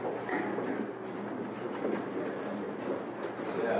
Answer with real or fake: real